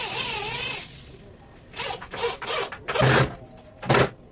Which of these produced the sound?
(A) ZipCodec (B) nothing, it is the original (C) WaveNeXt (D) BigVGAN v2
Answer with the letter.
B